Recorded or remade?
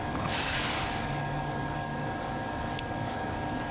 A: remade